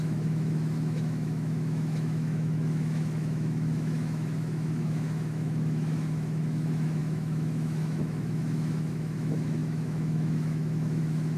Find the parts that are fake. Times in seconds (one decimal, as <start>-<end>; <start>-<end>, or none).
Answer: 0.0-11.4